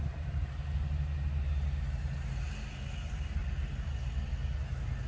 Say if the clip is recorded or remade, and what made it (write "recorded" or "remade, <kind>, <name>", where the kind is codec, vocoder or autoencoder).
recorded